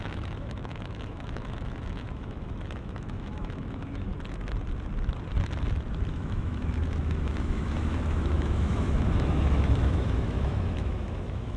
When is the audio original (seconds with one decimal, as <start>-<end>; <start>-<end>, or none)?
4.1-6.1